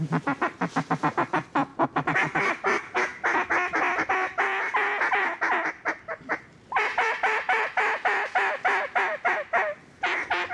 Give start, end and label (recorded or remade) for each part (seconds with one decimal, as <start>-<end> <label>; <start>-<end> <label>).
0.0-1.7 remade; 1.7-2.5 recorded; 2.5-3.1 remade; 3.1-3.7 recorded; 3.7-10.5 remade

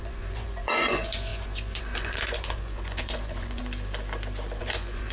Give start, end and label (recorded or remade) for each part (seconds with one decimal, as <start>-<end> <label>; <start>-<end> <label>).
0.0-3.6 remade; 3.6-4.6 recorded; 4.6-5.1 remade

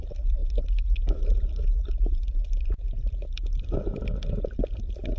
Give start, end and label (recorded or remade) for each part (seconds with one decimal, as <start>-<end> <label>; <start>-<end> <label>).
0.0-5.2 recorded

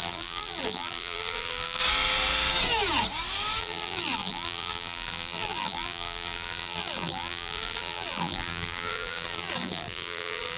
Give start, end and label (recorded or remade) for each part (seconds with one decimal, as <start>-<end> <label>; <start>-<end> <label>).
0.0-1.8 remade; 1.8-3.6 recorded; 3.6-10.6 remade

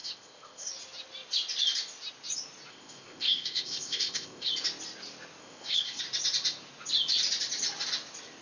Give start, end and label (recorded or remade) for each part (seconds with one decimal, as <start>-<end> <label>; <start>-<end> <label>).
0.0-0.7 remade; 0.7-2.7 recorded; 2.7-4.5 remade; 4.5-5.4 recorded; 5.4-6.0 remade; 6.0-8.4 recorded

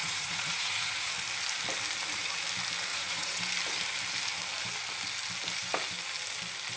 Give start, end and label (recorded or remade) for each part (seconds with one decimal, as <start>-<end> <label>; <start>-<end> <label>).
0.0-1.1 remade; 1.1-2.9 recorded; 2.9-3.4 remade; 3.4-6.8 recorded